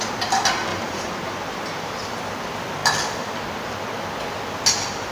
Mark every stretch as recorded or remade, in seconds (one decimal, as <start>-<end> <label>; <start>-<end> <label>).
0.0-0.7 recorded; 0.7-2.2 remade; 2.2-5.1 recorded